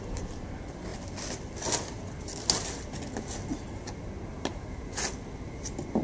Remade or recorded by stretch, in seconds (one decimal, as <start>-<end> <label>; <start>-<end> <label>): 0.0-6.0 recorded

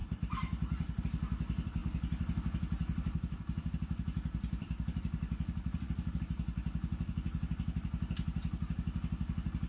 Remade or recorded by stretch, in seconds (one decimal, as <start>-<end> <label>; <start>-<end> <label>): 0.0-1.0 remade; 1.0-1.8 recorded; 1.8-6.2 remade; 6.2-9.7 recorded